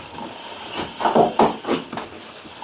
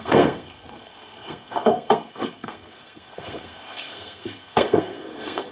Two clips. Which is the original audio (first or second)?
first